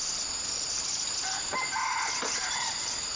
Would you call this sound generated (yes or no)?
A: no